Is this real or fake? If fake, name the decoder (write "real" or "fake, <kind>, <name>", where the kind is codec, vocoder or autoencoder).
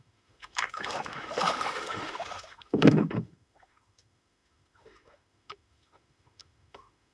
fake, autoencoder, DAC-VAE